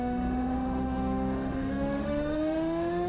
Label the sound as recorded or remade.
remade